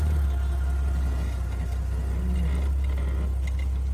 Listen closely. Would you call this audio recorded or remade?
recorded